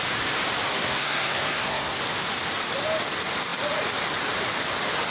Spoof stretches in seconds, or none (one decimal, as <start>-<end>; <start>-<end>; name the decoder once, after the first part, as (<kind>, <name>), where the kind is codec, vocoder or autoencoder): 0.7-2.0 (codec, SNAC)